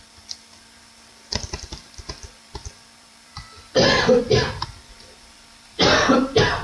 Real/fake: fake